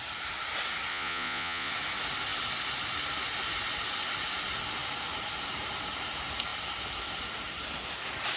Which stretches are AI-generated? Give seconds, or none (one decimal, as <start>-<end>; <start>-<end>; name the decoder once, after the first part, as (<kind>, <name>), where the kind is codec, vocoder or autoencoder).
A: 0.9-1.7 (vocoder, Vocos)